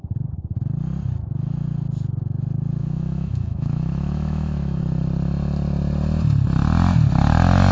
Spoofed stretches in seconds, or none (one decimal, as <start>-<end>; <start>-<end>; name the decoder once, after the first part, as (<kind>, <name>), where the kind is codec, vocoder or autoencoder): 2.8-4.8 (autoencoder, DAC-VAE)